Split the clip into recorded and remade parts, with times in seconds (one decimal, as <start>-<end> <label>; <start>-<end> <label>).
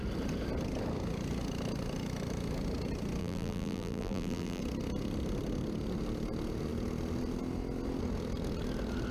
0.0-3.2 recorded; 3.2-4.6 remade; 4.6-9.1 recorded